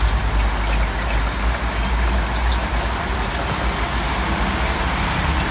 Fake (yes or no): no